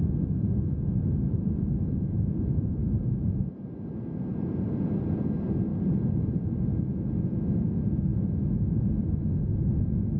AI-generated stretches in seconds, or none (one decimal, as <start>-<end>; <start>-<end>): 1.2-5.2; 5.7-6.9